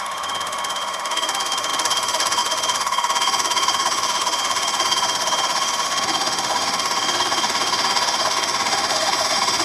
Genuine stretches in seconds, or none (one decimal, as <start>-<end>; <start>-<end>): none